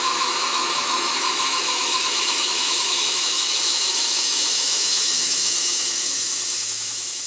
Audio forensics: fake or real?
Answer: fake